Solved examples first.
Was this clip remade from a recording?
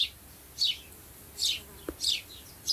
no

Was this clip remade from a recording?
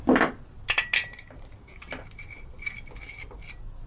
no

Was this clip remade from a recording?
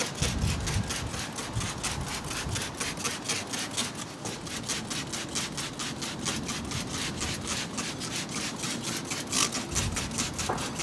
no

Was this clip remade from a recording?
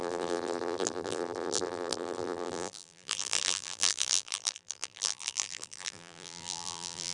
yes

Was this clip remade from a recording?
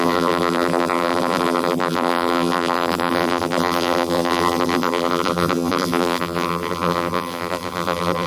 yes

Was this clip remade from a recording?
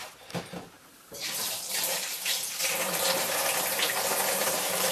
yes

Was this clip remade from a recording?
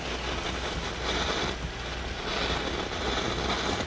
no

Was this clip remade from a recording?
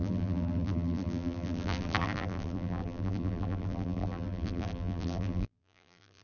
yes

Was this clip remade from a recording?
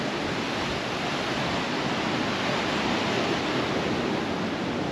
no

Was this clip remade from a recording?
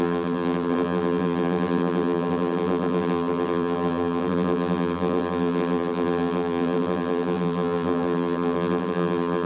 yes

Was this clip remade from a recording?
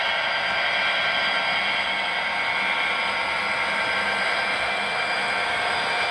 no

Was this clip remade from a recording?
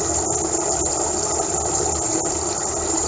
yes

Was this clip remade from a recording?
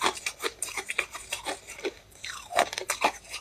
yes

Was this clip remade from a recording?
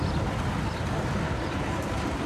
yes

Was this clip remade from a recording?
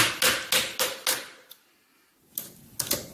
no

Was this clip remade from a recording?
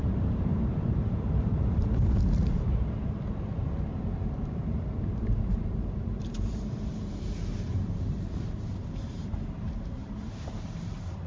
yes